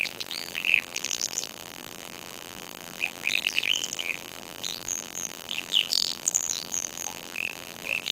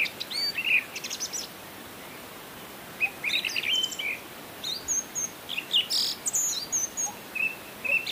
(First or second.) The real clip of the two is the second